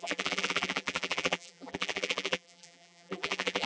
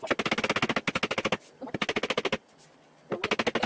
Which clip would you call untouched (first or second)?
second